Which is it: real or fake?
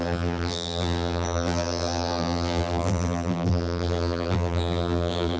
fake